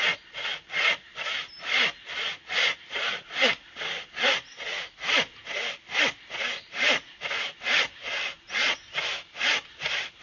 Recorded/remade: recorded